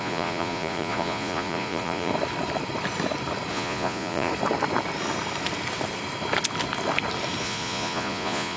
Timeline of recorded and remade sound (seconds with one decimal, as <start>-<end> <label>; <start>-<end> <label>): 0.0-2.1 remade; 2.1-3.5 recorded; 3.5-4.3 remade; 4.3-7.4 recorded; 7.4-8.6 remade